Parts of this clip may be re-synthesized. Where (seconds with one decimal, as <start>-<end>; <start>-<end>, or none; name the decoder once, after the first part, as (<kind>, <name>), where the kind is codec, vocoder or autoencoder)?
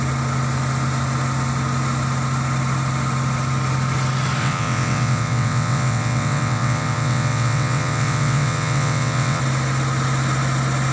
4.4-9.4 (vocoder, WaveNeXt)